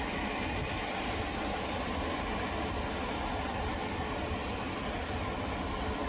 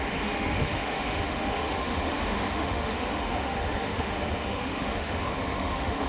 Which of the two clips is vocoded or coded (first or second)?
second